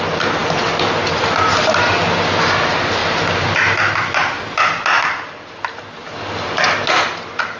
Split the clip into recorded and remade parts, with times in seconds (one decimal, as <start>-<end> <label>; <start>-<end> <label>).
0.0-7.6 recorded